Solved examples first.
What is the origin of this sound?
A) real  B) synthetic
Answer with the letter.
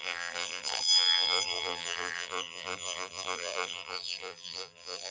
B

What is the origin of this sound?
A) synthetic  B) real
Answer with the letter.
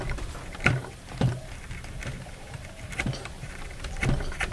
A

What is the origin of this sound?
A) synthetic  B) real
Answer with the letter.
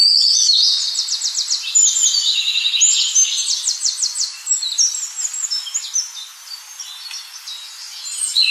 B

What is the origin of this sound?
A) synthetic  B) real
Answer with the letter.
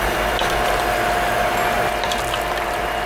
B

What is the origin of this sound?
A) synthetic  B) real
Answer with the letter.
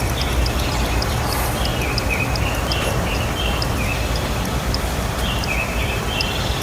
B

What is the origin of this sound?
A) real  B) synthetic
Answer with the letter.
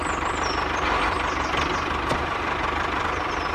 B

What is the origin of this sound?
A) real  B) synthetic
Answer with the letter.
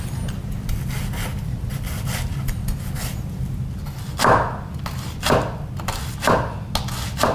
A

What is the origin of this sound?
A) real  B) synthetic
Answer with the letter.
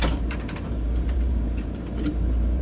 B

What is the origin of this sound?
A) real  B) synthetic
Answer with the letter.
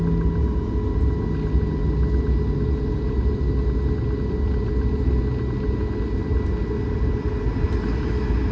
A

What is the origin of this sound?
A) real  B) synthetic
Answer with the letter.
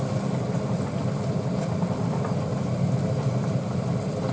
B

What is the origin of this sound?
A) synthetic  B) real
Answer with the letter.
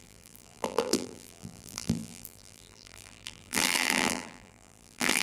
A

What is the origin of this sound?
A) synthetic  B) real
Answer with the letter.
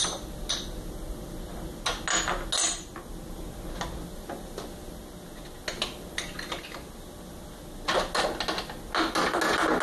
B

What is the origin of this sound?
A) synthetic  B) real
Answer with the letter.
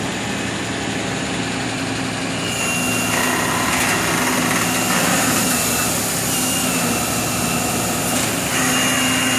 B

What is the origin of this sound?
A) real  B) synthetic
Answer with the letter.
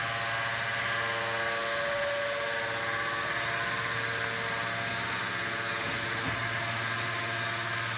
A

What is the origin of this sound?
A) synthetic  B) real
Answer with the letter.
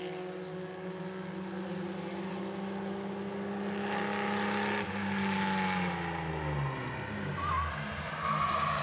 B